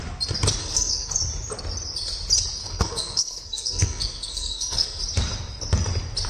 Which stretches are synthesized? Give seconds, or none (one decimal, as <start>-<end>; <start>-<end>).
0.6-1.1; 2.6-5.0